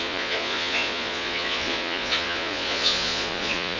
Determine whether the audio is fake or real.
fake